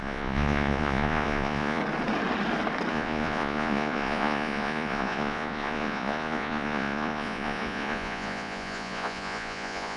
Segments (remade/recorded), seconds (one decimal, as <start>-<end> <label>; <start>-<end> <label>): 0.0-1.8 remade; 1.8-2.9 recorded; 2.9-10.0 remade